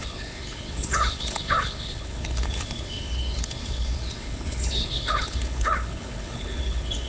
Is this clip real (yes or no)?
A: no